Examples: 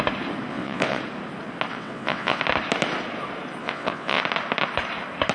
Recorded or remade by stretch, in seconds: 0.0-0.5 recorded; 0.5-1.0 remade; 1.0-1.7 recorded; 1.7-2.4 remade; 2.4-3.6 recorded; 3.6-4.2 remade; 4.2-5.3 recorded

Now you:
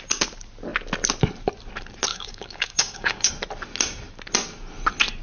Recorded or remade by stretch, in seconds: 0.0-2.1 recorded; 2.1-3.3 remade; 3.3-5.2 recorded